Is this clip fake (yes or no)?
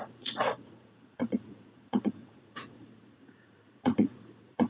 yes